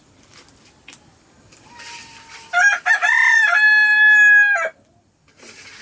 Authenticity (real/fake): real